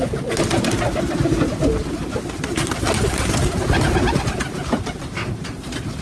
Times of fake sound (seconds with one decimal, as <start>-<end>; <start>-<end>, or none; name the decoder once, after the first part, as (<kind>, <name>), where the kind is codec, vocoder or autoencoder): 5.2-6.0 (vocoder, BigVGAN v2)